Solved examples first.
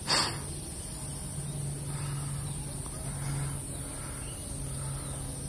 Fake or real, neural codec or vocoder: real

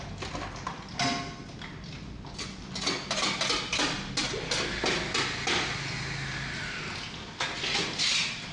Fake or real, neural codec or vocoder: real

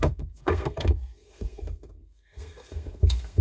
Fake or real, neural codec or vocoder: fake, codec, SNAC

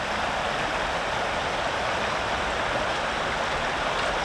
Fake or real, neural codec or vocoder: real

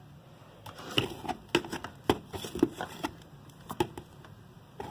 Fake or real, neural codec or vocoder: real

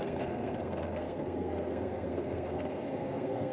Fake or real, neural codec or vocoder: fake, codec, SNAC